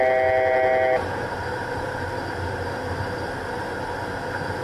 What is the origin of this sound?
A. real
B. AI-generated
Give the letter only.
A